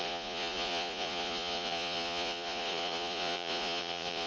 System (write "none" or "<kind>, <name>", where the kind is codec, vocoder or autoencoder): vocoder, Vocos